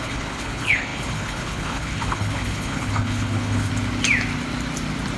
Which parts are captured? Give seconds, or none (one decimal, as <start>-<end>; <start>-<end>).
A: 3.7-5.2